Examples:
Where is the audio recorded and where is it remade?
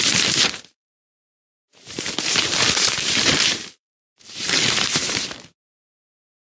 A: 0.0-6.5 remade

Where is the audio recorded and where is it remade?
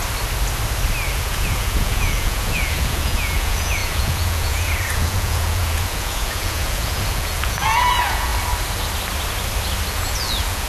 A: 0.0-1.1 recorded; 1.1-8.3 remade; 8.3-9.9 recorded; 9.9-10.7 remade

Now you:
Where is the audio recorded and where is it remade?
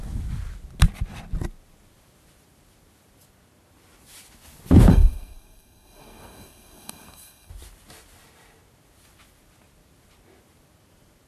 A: 0.0-4.9 recorded; 4.9-7.5 remade; 7.5-11.3 recorded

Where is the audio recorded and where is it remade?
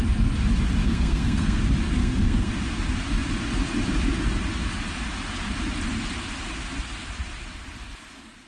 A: 0.0-0.8 recorded; 0.8-1.6 remade; 1.6-2.0 recorded; 2.0-2.5 remade; 2.5-8.5 recorded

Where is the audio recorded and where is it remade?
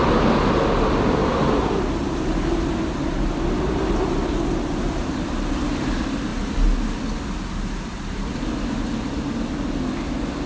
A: 0.0-10.5 recorded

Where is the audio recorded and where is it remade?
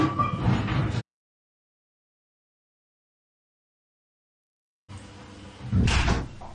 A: 0.0-1.0 recorded; 1.0-4.9 remade; 4.9-6.5 recorded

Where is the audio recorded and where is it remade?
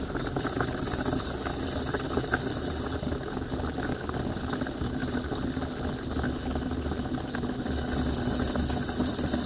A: 0.0-9.5 recorded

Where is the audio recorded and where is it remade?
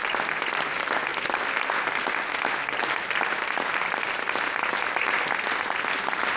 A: 0.0-6.4 recorded